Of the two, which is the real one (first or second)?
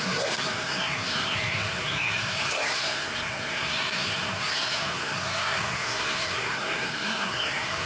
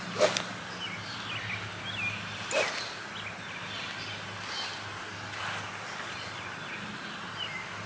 second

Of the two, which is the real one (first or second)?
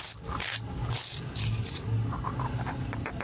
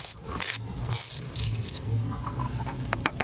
first